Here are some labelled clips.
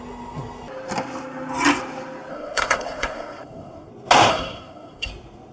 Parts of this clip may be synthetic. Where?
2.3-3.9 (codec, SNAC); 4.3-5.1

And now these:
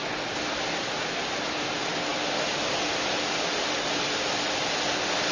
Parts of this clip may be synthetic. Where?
none

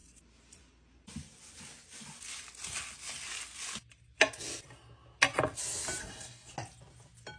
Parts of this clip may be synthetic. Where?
6.0-6.5 (codec, SNAC)

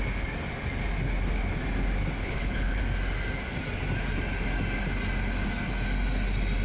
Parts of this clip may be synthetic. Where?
2.2-2.8 (codec, HILCodec)